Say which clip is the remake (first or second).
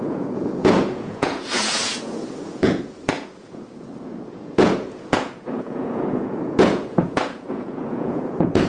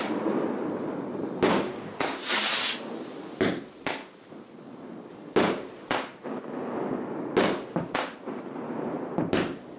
first